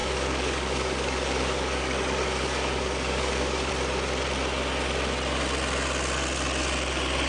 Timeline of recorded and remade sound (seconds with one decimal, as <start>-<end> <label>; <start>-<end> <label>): 0.0-3.7 remade; 3.7-7.3 recorded